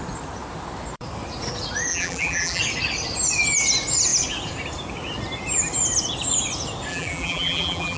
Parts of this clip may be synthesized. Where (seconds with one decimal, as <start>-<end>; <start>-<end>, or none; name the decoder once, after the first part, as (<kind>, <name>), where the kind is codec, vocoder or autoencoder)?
1.9-2.6 (vocoder, BigVGAN v2); 6.9-8.0